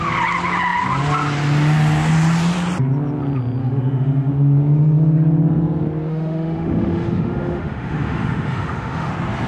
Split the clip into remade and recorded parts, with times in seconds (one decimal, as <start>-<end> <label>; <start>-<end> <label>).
0.0-3.6 recorded; 3.6-4.3 remade; 4.3-6.1 recorded; 6.1-9.1 remade; 9.1-9.5 recorded

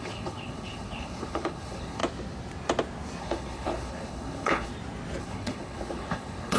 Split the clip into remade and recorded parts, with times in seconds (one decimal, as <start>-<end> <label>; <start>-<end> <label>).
0.0-2.0 remade; 2.0-3.2 recorded; 3.2-4.7 remade; 4.7-5.2 recorded; 5.2-6.6 remade

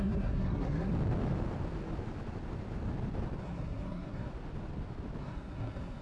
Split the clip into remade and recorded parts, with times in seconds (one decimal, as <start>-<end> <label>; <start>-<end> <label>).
0.0-0.9 remade; 0.9-3.4 recorded; 3.4-4.3 remade; 4.3-5.2 recorded; 5.2-6.0 remade

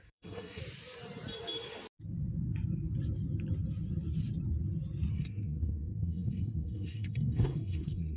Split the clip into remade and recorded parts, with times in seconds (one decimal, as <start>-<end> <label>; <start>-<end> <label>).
0.0-0.6 remade; 0.6-5.1 recorded; 5.1-8.2 remade